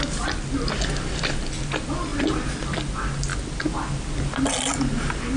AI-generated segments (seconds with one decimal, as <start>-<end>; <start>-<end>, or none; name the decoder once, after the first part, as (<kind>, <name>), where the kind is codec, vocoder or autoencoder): none